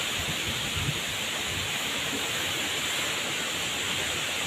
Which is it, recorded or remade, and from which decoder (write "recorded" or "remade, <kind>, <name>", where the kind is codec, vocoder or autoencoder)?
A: recorded